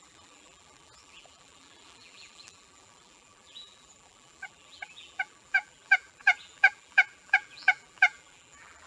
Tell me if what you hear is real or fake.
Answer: fake